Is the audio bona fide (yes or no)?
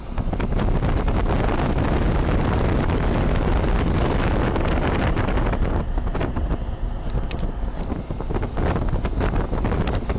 yes